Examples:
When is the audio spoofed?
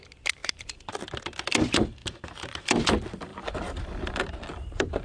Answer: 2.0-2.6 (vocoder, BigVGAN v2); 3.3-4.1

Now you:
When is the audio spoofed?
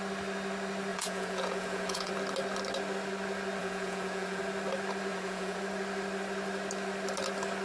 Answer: 0.9-2.1 (vocoder, Vocos); 3.6-4.4; 5.1-5.6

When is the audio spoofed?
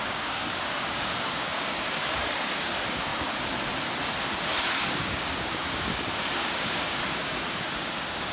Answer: 0.0-3.1 (codec, DAC); 4.6-8.3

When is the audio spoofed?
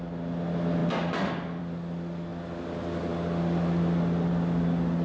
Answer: none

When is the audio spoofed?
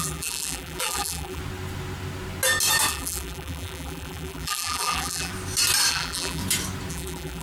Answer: 0.0-1.4 (vocoder, BigVGAN v2); 2.9-5.3; 5.9-6.4; 6.9-7.4